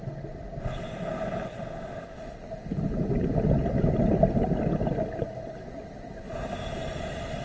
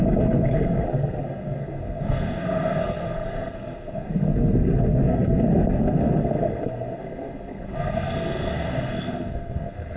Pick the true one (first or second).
first